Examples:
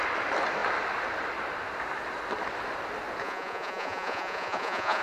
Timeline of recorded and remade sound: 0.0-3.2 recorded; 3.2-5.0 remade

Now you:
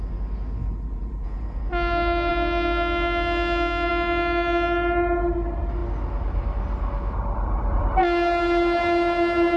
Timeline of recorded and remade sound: 0.0-0.6 recorded; 0.6-1.6 remade; 1.6-9.6 recorded